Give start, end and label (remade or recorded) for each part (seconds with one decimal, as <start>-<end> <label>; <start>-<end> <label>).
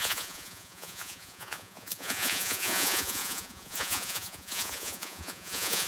0.0-5.9 remade